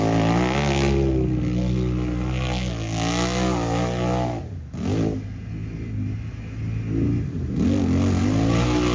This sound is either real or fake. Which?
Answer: real